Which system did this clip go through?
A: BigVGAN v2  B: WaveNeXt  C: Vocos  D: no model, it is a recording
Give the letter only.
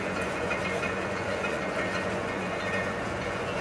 C